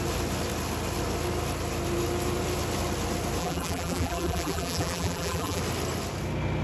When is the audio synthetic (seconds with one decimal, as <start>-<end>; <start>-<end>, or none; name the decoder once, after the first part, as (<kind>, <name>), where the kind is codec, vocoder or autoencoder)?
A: 3.4-5.6 (vocoder, BigVGAN v2)